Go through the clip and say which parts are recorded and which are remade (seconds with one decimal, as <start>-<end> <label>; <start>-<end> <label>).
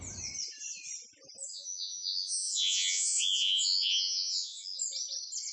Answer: 0.0-1.5 recorded; 1.5-4.8 remade; 4.8-5.5 recorded